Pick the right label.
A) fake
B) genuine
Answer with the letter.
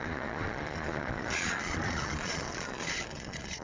A